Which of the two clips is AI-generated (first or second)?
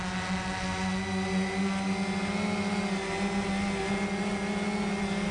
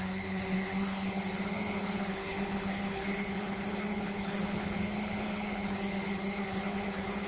second